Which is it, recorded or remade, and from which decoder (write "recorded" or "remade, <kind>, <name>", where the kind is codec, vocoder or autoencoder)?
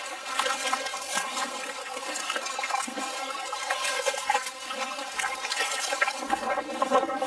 remade, codec, SNAC